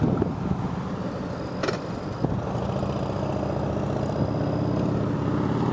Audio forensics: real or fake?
real